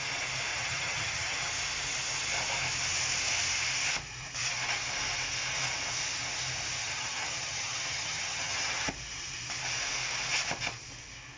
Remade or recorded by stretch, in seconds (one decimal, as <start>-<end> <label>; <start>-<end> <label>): 0.0-0.5 recorded; 0.5-1.5 remade; 1.5-6.8 recorded; 6.8-8.9 remade; 8.9-11.4 recorded